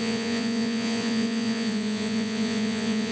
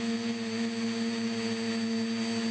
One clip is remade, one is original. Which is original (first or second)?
second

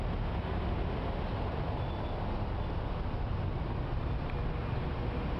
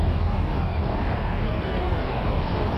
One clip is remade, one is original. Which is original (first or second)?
first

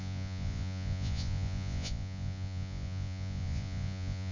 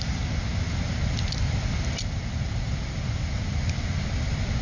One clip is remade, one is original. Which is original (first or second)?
second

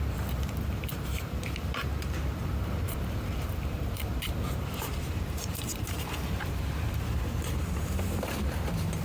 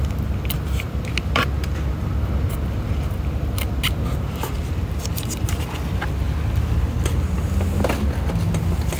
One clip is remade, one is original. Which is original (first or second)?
second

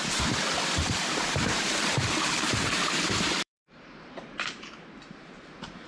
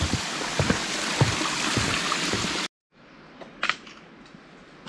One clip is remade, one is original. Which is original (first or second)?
second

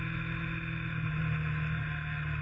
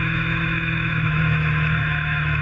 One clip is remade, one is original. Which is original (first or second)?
first